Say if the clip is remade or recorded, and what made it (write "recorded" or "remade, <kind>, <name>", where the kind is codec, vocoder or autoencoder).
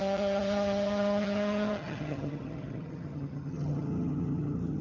remade, vocoder, HiFi-GAN